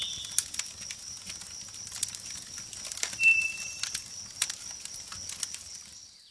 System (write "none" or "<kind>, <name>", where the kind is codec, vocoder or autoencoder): none